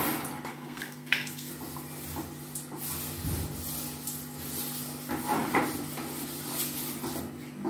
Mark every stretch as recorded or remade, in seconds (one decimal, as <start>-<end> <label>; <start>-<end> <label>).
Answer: 0.0-0.5 recorded; 0.5-1.5 remade; 1.5-7.7 recorded